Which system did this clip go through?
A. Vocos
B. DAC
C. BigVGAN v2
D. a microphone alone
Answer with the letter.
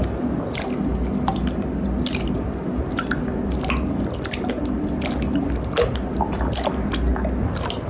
D